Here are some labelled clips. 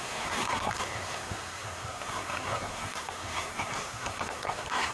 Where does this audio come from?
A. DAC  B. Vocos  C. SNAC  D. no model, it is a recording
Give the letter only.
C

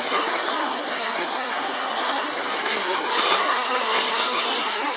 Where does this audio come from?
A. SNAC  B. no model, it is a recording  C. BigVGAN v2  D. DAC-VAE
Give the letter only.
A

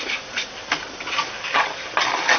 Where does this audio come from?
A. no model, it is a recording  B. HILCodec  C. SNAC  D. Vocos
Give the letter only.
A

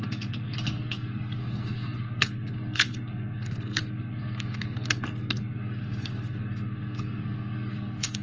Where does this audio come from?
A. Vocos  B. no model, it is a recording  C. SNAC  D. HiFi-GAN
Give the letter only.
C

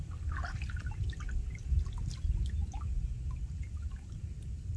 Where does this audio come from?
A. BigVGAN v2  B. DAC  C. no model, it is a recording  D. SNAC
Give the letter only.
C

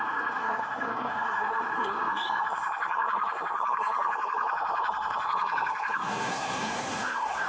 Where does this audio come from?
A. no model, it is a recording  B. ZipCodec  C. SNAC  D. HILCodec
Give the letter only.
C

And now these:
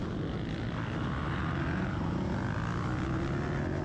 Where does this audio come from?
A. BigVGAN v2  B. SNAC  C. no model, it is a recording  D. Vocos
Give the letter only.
C